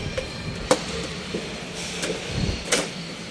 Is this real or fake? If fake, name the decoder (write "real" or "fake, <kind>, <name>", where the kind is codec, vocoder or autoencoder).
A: fake, vocoder, BigVGAN v2